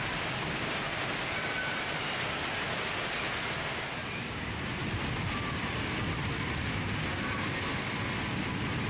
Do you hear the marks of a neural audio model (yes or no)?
no